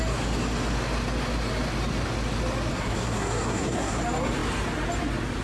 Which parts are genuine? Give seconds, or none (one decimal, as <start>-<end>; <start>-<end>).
0.0-2.7; 4.0-5.4